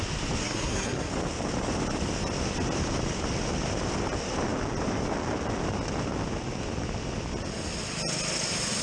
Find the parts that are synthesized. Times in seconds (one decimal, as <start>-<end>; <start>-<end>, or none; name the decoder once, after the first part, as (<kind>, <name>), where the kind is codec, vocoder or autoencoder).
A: 0.4-1.1 (codec, SNAC)